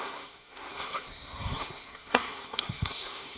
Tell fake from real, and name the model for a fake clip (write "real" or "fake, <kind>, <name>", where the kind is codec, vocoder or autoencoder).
fake, codec, SNAC